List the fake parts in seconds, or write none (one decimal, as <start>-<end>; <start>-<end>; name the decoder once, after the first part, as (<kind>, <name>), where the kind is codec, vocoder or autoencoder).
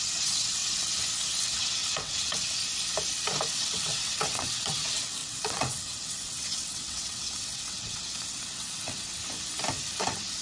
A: 0.0-0.6 (vocoder, WaveNeXt); 1.4-2.6; 3.5-9.2; 10.0-10.4